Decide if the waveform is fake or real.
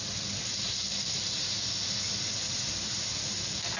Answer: real